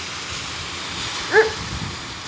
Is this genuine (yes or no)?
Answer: yes